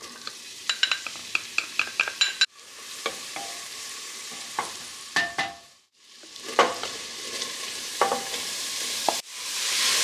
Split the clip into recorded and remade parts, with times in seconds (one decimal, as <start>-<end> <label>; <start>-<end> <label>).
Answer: 0.0-1.2 remade; 1.2-3.1 recorded; 3.1-10.0 remade